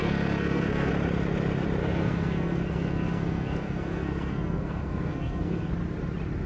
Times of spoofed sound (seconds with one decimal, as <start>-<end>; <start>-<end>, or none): 0.0-0.9; 1.8-5.7